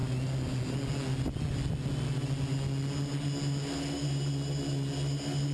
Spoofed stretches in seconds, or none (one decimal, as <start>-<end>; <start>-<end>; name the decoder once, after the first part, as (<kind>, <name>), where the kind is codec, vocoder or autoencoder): none